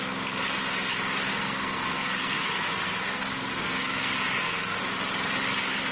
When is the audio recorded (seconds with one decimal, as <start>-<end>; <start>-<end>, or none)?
0.0-1.3; 4.8-5.9